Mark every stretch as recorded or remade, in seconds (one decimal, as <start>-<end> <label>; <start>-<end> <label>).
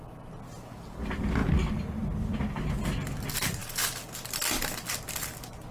0.0-5.7 recorded